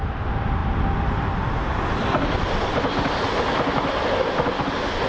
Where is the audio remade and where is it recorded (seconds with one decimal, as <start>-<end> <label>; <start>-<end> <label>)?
0.0-5.1 recorded